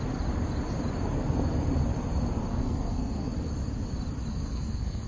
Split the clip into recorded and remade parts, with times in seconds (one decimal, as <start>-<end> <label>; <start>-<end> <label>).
0.0-2.5 recorded; 2.5-3.3 remade; 3.3-4.3 recorded; 4.3-5.1 remade